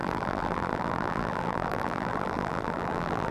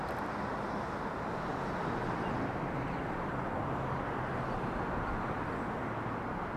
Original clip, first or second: second